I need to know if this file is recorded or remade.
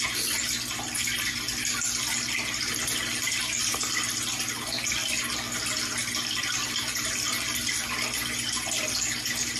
recorded